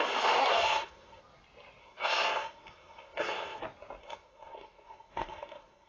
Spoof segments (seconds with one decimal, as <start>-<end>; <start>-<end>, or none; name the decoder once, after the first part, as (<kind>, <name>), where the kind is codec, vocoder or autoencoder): 0.4-1.2 (codec, SNAC); 1.8-3.6; 4.0-5.9

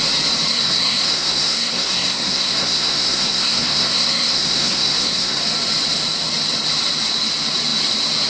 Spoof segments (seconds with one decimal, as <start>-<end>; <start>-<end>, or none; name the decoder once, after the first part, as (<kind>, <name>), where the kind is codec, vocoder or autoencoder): 0.5-5.4 (codec, SNAC)

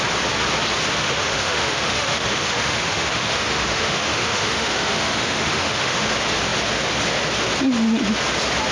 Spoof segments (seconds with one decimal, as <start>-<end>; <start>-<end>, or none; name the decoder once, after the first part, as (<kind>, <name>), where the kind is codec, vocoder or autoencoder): 1.0-6.1 (autoencoder, DAC-VAE)

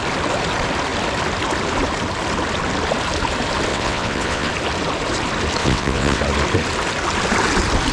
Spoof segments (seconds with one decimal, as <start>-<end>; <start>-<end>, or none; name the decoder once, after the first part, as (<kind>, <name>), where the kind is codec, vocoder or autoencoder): 3.7-4.5 (vocoder, WaveNeXt); 5.6-6.2